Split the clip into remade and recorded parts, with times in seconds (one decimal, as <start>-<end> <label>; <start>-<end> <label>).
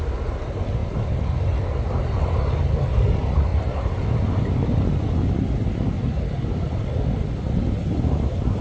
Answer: 0.0-8.6 recorded